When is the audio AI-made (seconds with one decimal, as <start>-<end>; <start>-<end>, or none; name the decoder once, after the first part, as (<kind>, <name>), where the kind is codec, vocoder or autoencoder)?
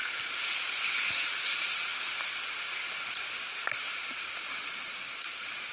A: 1.5-1.9 (vocoder, BigVGAN v2); 3.9-5.7